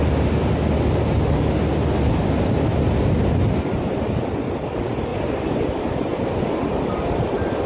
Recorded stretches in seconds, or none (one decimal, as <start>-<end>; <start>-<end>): 0.0-5.1; 5.8-7.7